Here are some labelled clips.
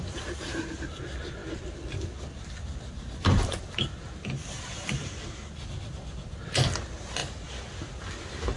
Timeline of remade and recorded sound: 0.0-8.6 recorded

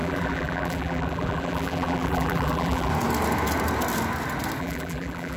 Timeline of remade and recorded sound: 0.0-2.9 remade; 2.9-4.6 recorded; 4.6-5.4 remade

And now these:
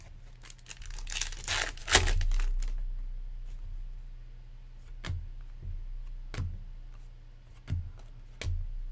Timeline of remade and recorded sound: 0.0-8.9 recorded